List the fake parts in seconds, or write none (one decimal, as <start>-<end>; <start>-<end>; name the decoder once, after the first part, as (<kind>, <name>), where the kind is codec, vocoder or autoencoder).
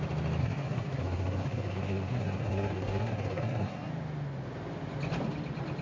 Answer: 0.4-3.9 (codec, SNAC)